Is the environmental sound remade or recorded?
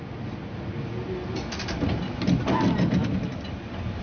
recorded